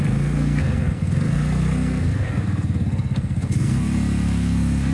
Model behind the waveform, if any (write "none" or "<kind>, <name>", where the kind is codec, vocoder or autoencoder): codec, SNAC